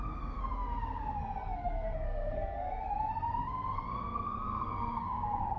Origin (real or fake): fake